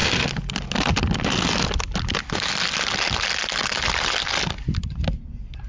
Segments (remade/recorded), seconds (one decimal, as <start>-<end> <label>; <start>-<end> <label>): 0.0-5.7 recorded